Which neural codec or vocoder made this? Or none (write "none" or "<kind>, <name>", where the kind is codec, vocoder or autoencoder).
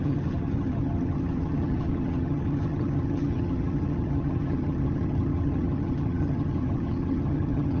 vocoder, HiFi-GAN